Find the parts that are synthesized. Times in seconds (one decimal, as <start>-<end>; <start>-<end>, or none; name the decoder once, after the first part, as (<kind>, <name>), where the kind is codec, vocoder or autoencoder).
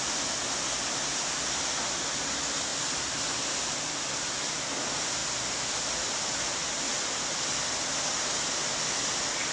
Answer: none